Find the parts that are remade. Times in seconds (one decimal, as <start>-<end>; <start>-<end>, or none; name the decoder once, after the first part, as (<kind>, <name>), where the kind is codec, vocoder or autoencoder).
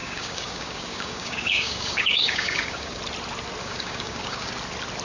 0.0-3.0 (codec, DAC); 3.6-4.5